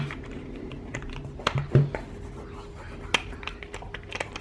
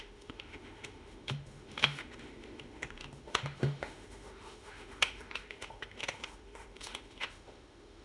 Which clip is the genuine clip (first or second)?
first